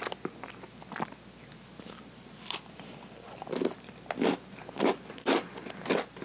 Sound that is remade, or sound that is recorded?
recorded